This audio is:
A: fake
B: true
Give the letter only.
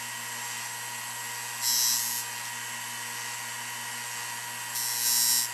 B